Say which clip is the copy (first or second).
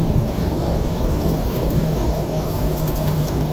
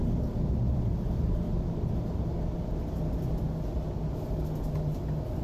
first